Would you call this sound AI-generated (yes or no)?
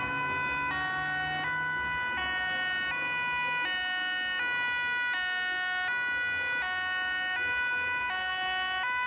no